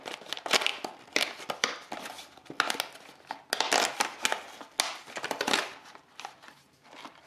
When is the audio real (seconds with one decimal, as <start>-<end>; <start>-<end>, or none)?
0.0-5.6